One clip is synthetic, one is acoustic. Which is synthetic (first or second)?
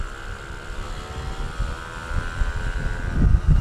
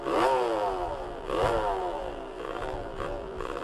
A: second